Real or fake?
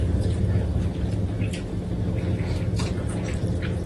real